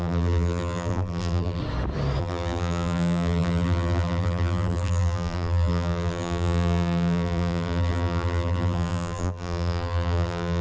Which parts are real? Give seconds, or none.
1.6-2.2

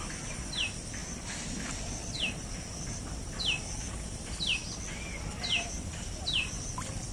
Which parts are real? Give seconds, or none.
4.6-5.6